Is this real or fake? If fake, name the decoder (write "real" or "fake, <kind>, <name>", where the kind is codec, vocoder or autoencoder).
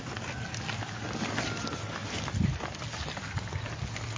real